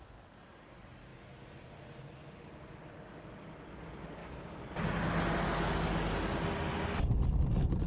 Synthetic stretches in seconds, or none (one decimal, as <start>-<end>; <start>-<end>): none